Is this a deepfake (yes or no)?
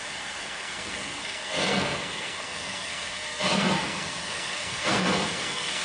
yes